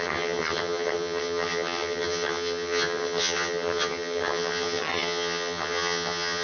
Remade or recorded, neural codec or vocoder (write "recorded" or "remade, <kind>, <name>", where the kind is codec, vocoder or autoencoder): remade, vocoder, HiFi-GAN